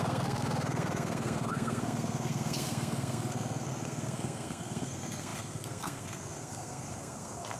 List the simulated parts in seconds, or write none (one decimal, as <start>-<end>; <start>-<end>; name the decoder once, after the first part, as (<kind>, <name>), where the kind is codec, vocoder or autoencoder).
0.0-7.6 (codec, SNAC)